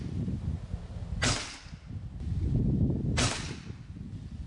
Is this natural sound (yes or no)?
yes